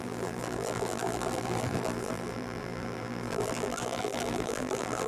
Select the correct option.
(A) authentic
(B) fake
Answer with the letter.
B